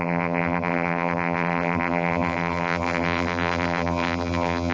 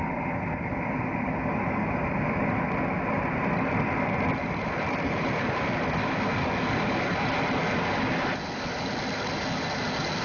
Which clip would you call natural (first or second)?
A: second